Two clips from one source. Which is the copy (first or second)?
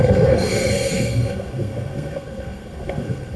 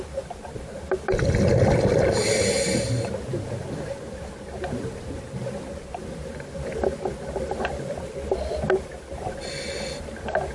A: first